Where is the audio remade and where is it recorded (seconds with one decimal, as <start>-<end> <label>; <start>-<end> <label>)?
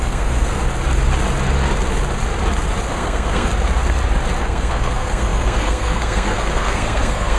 0.0-0.6 remade; 0.6-2.9 recorded; 2.9-3.5 remade; 3.5-4.4 recorded; 4.4-7.4 remade